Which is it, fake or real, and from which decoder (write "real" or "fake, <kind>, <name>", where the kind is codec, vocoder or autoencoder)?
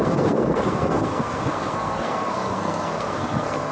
fake, codec, SNAC